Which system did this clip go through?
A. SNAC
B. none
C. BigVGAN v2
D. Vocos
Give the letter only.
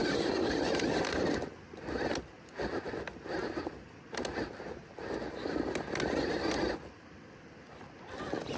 B